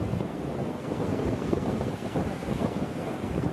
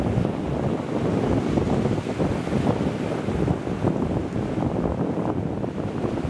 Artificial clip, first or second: first